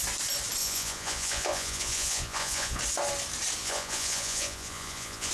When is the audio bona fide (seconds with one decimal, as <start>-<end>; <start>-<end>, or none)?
0.0-0.6; 2.8-3.6